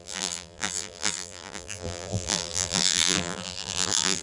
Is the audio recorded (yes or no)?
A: no